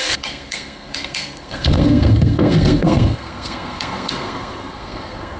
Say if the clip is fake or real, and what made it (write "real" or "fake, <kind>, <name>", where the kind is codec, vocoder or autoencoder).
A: fake, codec, SNAC